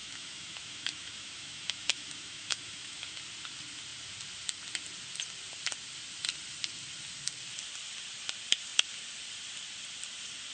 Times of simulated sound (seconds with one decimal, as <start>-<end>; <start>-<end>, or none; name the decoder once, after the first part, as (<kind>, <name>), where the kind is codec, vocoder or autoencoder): 0.0-3.2 (autoencoder, DAC-VAE)